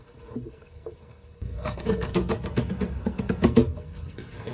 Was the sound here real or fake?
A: fake